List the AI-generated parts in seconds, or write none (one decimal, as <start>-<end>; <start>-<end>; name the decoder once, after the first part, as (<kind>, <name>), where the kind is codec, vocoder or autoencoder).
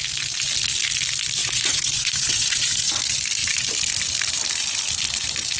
1.4-2.9 (vocoder, Vocos)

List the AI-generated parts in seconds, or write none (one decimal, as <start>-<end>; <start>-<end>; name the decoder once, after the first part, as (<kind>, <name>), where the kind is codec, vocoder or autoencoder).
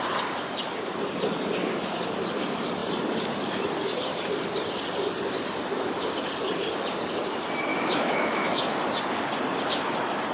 7.7-8.6 (autoencoder, DAC-VAE)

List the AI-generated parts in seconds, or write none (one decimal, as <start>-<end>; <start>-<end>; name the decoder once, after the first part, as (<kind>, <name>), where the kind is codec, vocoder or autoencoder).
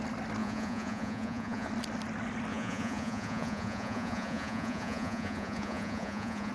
0.4-1.7 (vocoder, Vocos); 2.5-6.5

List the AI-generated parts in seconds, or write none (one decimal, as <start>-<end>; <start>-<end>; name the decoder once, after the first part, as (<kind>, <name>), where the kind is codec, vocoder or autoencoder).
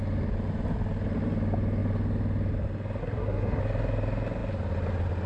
3.0-3.6 (codec, SNAC)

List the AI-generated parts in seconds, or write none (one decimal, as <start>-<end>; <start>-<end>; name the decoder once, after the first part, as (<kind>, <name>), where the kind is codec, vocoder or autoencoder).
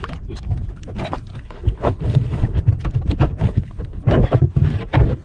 1.3-2.6 (codec, HILCodec); 3.4-4.0